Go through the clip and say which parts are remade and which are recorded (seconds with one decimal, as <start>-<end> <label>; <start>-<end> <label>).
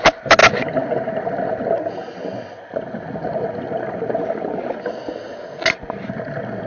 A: 0.0-6.7 recorded